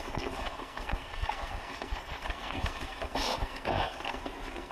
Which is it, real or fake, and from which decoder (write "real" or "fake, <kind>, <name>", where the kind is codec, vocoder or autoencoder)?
fake, codec, SNAC